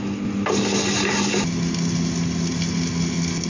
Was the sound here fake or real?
real